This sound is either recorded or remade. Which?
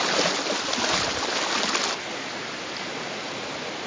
recorded